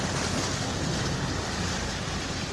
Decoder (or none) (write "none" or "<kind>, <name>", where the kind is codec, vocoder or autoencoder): none